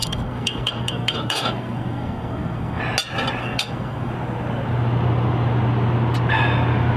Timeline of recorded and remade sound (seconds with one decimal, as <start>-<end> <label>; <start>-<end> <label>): 0.0-2.8 remade; 2.8-3.4 recorded; 3.4-4.1 remade; 4.1-7.0 recorded